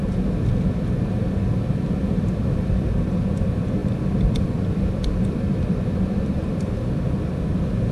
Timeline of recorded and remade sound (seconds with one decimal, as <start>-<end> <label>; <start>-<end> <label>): 0.0-1.2 recorded; 1.2-7.9 remade